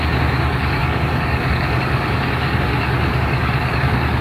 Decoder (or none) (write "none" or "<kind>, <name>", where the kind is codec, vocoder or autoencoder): codec, DAC